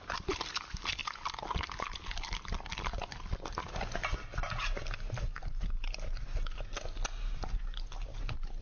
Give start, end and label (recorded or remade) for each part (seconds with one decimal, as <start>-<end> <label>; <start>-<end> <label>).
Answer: 0.0-8.6 recorded

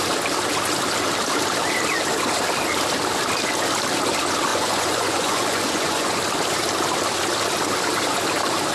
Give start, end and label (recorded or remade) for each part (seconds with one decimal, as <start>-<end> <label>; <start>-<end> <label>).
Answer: 0.0-4.5 recorded; 4.5-6.2 remade; 6.2-8.7 recorded

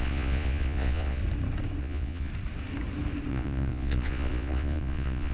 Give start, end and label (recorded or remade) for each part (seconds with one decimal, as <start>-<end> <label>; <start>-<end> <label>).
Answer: 0.0-1.2 remade; 1.2-1.8 recorded; 1.8-2.3 remade; 2.3-3.3 recorded; 3.3-5.3 remade

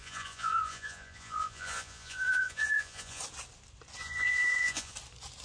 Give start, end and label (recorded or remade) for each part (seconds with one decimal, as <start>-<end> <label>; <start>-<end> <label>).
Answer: 0.0-3.2 remade; 3.2-4.0 recorded; 4.0-4.9 remade; 4.9-5.4 recorded

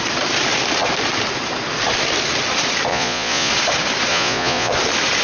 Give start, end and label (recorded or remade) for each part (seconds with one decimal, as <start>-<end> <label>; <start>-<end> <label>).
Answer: 0.0-2.9 recorded; 2.9-3.5 remade; 3.5-4.1 recorded; 4.1-4.7 remade; 4.7-5.2 recorded

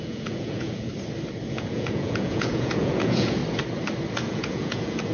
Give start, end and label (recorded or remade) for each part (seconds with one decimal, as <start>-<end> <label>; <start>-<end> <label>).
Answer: 0.0-0.9 remade; 0.9-1.5 recorded; 1.5-3.4 remade; 3.4-4.3 recorded; 4.3-5.1 remade

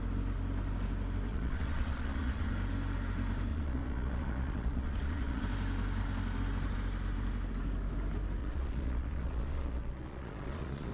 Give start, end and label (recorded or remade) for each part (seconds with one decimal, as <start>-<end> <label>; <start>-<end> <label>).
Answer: 0.0-1.3 recorded; 1.3-2.5 remade; 2.5-3.5 recorded; 3.5-5.4 remade; 5.4-8.4 recorded; 8.4-10.9 remade